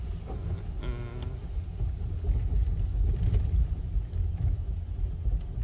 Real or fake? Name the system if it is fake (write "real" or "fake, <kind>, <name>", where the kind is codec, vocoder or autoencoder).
real